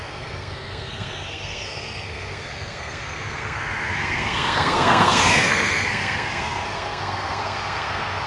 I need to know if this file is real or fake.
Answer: fake